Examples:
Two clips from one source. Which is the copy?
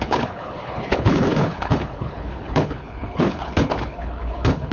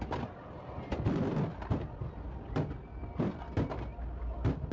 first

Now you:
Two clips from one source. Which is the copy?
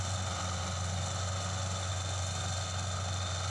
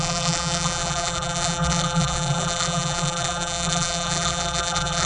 second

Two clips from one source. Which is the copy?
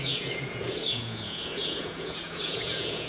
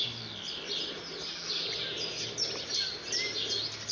first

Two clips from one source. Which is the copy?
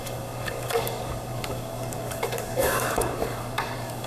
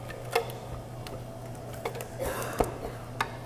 first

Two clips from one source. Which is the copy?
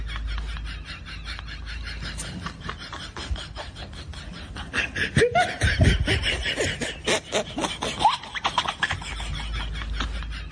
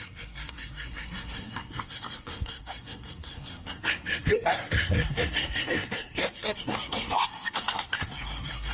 second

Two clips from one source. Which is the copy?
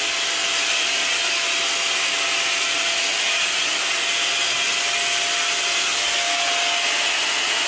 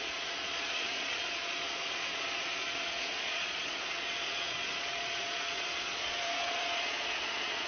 second